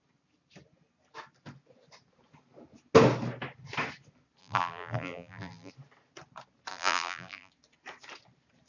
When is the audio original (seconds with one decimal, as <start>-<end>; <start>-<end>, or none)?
0.0-4.4; 5.7-6.7; 7.5-8.7